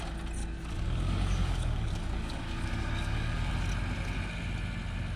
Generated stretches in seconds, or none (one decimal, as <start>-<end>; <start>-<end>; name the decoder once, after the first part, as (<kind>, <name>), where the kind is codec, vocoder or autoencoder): 0.4-3.5 (codec, DAC)